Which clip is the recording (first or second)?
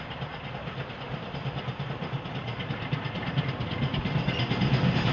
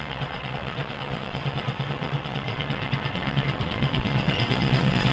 first